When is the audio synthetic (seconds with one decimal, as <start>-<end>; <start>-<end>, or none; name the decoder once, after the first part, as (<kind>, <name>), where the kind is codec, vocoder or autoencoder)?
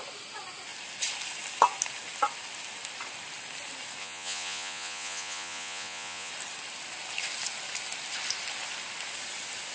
4.0-6.3 (vocoder, Vocos)